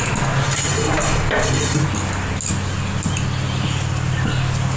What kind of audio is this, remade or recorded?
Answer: recorded